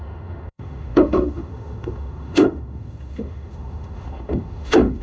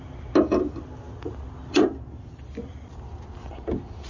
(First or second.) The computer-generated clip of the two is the first